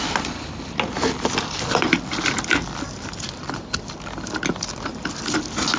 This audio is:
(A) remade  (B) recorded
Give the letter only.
B